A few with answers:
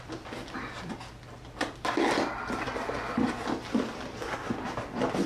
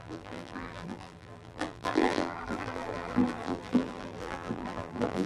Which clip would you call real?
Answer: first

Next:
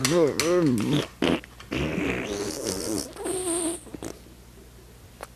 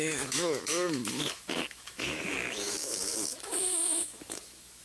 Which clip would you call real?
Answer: first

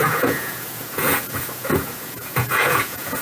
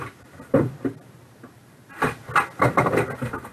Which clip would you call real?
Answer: second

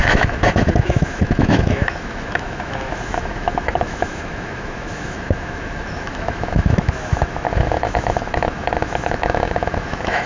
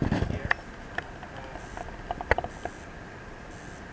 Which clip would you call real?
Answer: second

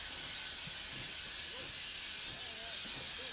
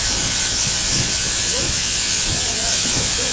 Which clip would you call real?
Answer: first